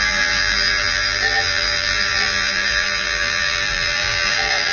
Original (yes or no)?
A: no